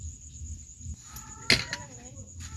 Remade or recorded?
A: recorded